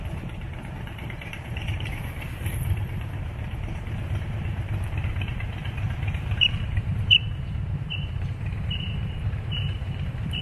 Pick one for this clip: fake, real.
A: fake